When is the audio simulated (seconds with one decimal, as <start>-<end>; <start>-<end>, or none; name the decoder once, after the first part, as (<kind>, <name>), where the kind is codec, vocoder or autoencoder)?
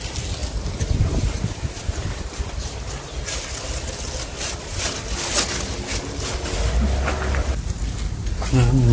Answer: none